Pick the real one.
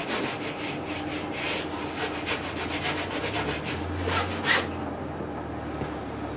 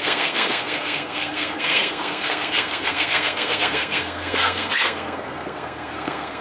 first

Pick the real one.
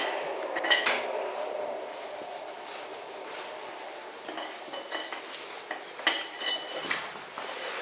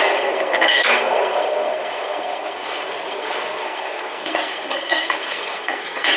first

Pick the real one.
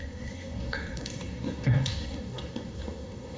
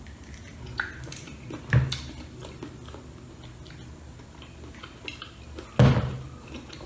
second